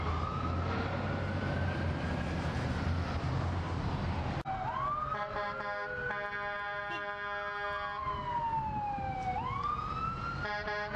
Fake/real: real